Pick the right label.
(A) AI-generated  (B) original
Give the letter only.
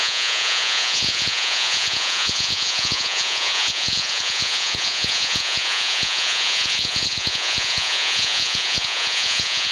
A